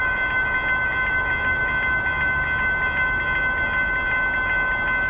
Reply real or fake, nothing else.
real